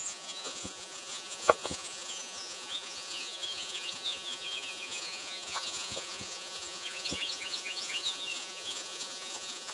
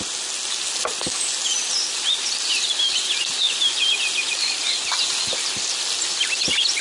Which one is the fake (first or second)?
first